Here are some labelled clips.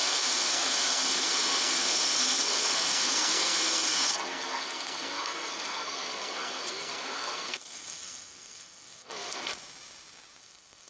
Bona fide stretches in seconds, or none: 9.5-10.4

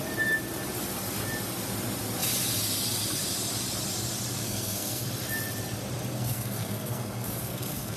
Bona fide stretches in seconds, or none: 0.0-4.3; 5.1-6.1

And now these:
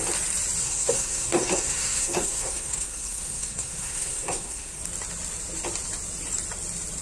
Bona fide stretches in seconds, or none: 0.0-0.6; 4.8-7.0

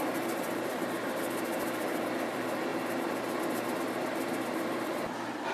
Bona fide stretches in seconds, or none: 0.0-5.5

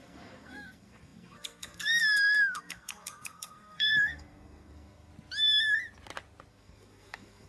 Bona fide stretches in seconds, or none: 5.1-6.5

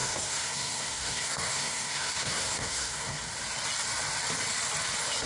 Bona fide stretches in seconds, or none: 3.2-5.3

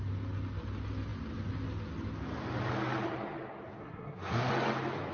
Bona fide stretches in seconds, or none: 0.0-3.8; 4.5-5.1